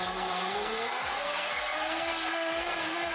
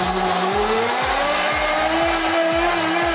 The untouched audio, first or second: second